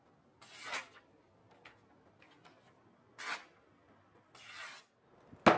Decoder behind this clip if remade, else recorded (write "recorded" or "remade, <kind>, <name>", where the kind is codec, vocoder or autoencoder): recorded